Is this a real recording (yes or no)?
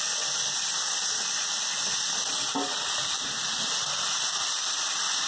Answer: yes